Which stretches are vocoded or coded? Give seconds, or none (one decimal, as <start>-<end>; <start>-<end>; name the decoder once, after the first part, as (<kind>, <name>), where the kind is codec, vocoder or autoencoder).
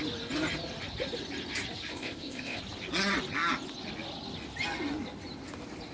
1.9-2.6 (codec, ZipCodec)